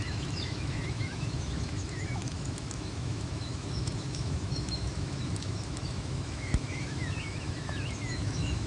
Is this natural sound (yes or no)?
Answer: no